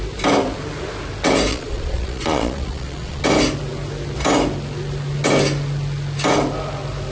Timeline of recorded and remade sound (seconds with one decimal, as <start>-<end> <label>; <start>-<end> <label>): 0.0-1.5 recorded; 1.5-3.2 remade; 3.2-7.1 recorded